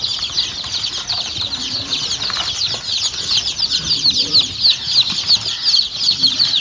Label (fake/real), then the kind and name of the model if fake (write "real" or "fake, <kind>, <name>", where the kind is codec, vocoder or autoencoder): real